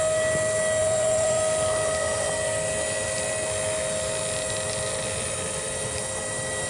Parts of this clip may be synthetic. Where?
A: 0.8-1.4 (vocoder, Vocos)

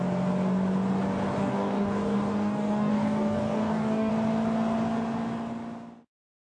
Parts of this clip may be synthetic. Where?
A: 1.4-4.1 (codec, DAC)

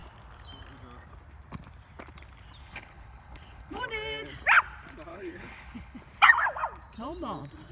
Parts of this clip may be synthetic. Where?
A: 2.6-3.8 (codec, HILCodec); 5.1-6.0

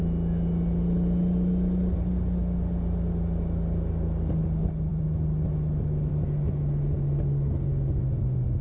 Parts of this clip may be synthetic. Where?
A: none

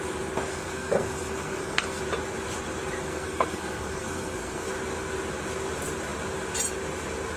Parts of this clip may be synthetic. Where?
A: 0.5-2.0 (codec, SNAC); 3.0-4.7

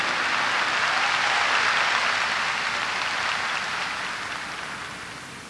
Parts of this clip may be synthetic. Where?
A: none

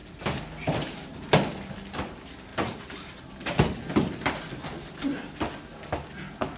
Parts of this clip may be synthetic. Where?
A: 2.5-3.2 (vocoder, BigVGAN v2)

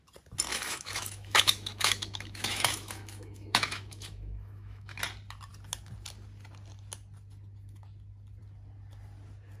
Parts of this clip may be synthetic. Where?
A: 0.5-5.0 (autoencoder, DAC-VAE)